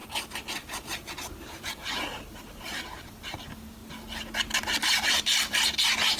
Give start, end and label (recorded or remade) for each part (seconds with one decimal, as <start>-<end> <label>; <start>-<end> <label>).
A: 0.0-2.2 recorded; 2.2-3.8 remade; 3.8-4.8 recorded; 4.8-6.2 remade